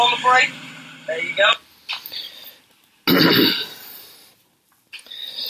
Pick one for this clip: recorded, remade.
recorded